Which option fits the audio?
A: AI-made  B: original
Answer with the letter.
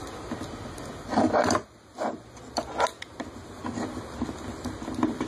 B